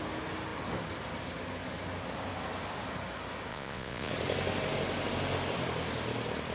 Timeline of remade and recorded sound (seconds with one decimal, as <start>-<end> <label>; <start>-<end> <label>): 0.0-3.5 recorded; 3.5-4.1 remade; 4.1-6.5 recorded